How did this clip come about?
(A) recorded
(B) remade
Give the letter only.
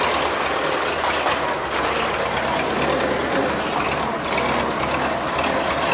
A